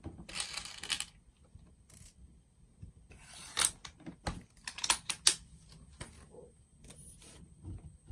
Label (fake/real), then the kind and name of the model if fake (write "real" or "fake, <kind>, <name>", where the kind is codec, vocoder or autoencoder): real